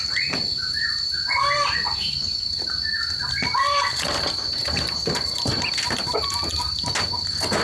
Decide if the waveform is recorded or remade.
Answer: recorded